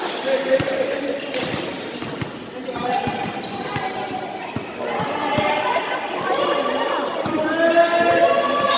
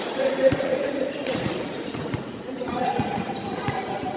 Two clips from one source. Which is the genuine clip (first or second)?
first